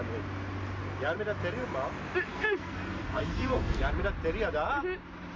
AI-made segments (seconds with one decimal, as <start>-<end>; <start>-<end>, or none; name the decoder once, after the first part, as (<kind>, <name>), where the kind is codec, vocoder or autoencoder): 2.3-3.8 (codec, SNAC)